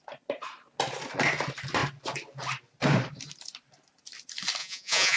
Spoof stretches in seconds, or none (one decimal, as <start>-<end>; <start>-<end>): 4.6-5.2